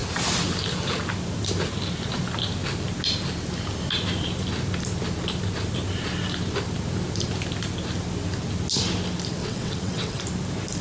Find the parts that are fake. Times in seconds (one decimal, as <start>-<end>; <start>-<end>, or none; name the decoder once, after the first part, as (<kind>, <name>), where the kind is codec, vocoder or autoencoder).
9.4-10.2 (vocoder, WaveNeXt)